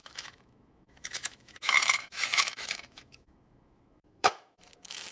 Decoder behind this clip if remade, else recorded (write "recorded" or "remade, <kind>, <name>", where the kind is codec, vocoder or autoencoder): remade, autoencoder, DAC-VAE